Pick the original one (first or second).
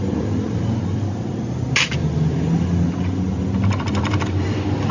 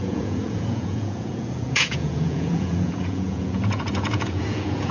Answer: first